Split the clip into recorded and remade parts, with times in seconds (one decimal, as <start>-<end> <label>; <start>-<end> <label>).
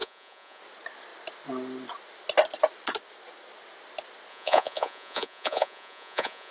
0.0-0.6 remade; 0.6-4.3 recorded; 4.3-6.5 remade